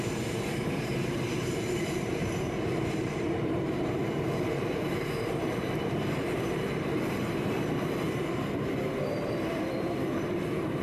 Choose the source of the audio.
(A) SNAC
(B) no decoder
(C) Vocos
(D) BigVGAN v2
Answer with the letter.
D